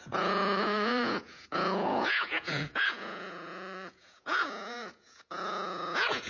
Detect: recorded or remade remade